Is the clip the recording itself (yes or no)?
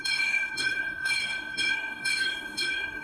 no